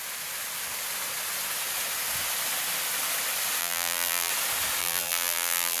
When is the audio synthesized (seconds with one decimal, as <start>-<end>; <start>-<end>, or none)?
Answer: 3.6-4.3; 4.8-5.8